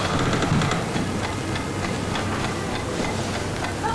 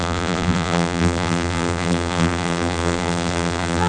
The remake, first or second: second